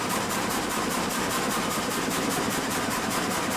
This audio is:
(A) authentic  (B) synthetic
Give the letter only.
A